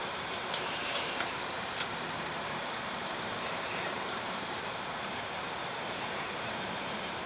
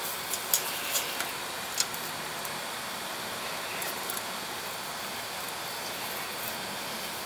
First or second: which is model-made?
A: first